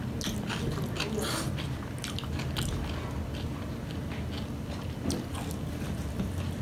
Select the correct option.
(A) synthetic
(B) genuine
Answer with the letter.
B